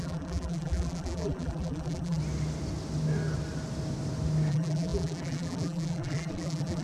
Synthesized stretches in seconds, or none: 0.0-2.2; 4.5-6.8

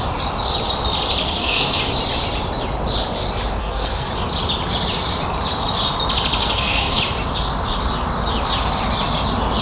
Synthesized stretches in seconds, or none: 1.2-1.8; 3.6-4.1; 6.4-7.0

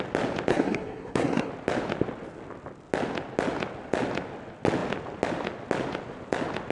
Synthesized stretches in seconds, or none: 0.5-1.5

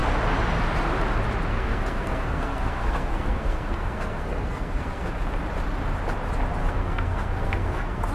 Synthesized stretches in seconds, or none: 1.5-5.1; 6.6-8.1